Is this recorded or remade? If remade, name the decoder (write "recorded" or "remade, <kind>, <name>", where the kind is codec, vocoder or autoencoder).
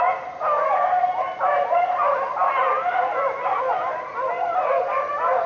recorded